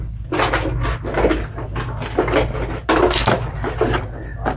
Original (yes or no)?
yes